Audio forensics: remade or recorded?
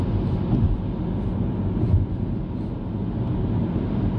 recorded